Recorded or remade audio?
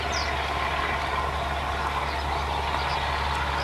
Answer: recorded